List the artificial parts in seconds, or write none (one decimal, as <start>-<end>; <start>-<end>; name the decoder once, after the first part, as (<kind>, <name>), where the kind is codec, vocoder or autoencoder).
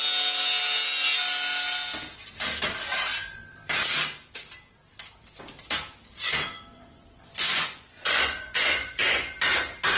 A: 6.7-9.3 (vocoder, Vocos)